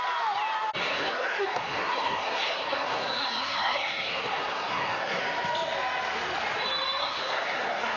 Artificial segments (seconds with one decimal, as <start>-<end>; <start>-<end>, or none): 0.8-5.2; 7.0-8.0